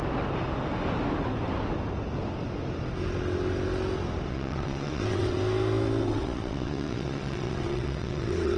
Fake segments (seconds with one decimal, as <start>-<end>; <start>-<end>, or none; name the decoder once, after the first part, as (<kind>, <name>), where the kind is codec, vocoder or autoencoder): 4.3-5.4 (vocoder, WaveNeXt); 6.0-8.6